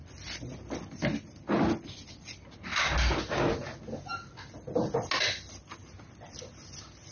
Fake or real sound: real